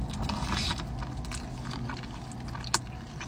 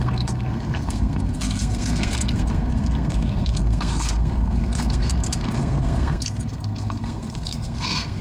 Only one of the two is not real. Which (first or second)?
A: second